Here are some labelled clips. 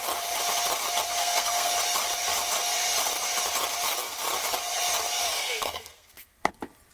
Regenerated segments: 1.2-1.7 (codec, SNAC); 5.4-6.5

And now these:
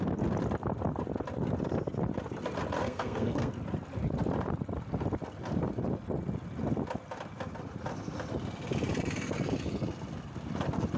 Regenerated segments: 2.8-3.5 (codec, SNAC)

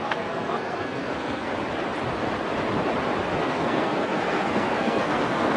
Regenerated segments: 0.0-1.5 (codec, SNAC); 3.4-5.6

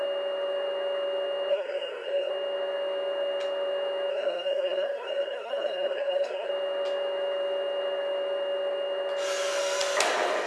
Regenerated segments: 1.5-2.3 (codec, SNAC); 4.1-6.5

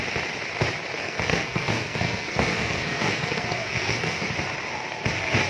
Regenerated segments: 1.0-4.3 (codec, SNAC)